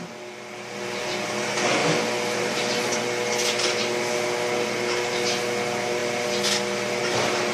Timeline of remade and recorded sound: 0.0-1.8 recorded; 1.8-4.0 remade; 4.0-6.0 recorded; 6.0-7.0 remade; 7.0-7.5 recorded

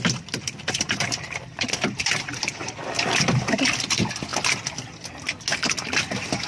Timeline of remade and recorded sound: 0.0-2.8 remade; 2.8-3.5 recorded; 3.5-4.3 remade; 4.3-5.7 recorded; 5.7-6.5 remade

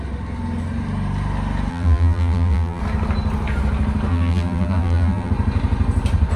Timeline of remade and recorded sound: 0.0-1.7 recorded; 1.7-2.8 remade; 2.8-4.1 recorded; 4.1-5.3 remade; 5.3-6.4 recorded

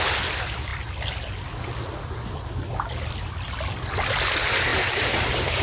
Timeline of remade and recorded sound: 0.0-4.7 recorded; 4.7-5.6 remade